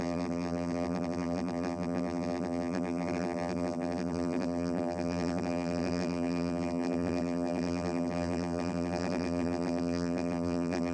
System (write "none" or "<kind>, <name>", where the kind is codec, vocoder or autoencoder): vocoder, BigVGAN v2